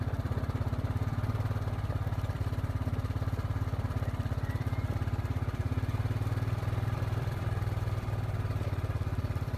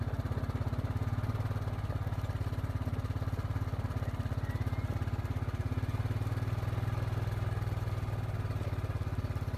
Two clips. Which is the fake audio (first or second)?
first